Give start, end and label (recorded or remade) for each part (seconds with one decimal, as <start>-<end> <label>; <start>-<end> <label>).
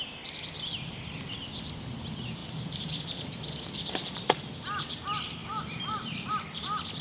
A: 0.0-2.4 recorded; 2.4-3.0 remade; 3.0-5.4 recorded; 5.4-6.3 remade; 6.3-7.0 recorded